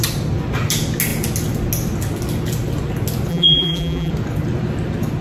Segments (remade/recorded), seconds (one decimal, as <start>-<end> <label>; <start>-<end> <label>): 0.0-3.3 recorded; 3.3-4.1 remade; 4.1-5.2 recorded